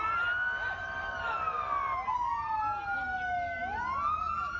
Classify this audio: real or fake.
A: real